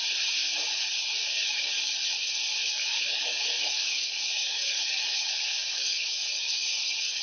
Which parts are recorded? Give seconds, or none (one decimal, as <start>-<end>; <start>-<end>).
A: 0.0-1.2; 1.9-2.6